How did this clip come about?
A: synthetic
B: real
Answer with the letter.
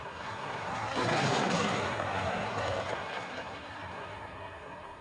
A